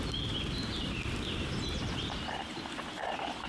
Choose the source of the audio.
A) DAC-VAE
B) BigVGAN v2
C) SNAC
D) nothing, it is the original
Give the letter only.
B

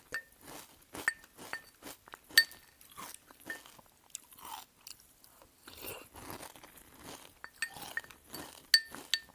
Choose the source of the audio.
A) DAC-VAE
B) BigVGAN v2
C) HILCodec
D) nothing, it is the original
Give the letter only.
D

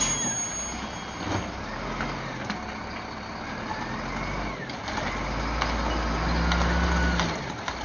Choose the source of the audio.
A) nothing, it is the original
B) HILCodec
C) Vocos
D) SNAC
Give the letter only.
A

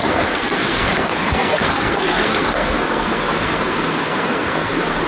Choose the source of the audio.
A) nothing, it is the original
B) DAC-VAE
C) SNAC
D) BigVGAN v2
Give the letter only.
C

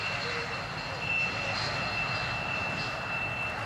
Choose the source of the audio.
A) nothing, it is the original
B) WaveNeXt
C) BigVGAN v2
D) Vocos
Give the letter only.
A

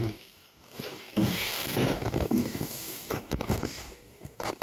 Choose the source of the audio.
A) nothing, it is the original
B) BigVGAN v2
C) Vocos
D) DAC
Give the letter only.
D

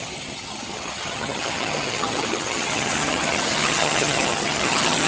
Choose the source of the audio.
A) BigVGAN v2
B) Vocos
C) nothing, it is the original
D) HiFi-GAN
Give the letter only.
D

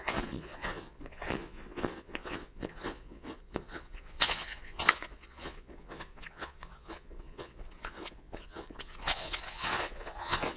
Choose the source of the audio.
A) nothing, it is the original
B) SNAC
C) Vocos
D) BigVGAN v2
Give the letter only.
C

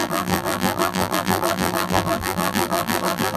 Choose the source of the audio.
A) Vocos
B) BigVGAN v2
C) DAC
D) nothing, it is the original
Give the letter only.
B